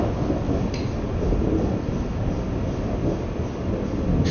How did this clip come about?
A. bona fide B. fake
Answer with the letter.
A